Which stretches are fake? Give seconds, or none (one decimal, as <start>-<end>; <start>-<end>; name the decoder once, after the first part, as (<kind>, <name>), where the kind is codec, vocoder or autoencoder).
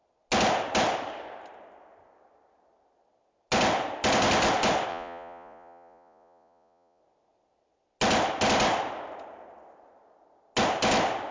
4.9-7.0 (vocoder, Vocos)